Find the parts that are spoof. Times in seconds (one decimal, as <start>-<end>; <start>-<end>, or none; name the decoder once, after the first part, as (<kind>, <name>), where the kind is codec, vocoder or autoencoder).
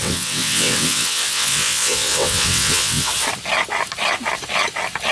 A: 0.0-3.1 (vocoder, WaveNeXt)